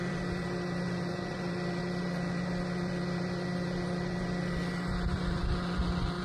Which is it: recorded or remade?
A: recorded